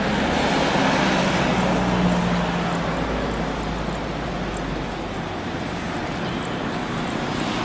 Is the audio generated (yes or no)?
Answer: no